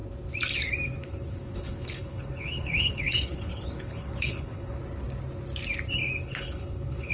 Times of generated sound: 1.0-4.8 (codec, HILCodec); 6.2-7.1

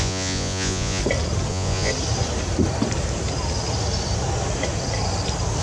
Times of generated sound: 0.0-1.0 (vocoder, Vocos); 1.5-1.9

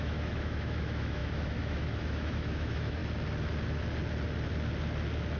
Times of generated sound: 0.0-3.0 (autoencoder, DAC-VAE)

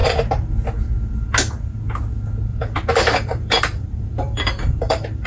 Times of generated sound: 0.0-0.5 (vocoder, BigVGAN v2); 2.5-5.3

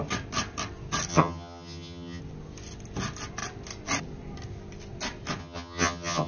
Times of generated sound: 1.1-2.2 (vocoder, HiFi-GAN); 5.4-6.3

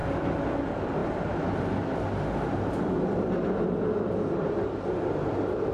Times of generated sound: none

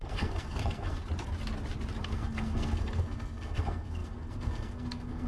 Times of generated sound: 0.0-1.0 (codec, SNAC); 2.0-5.3